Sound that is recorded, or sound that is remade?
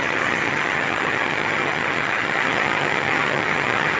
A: remade